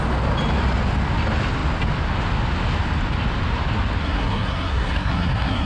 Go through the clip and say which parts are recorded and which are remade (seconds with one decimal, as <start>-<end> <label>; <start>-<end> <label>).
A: 0.0-4.0 recorded; 4.0-5.7 remade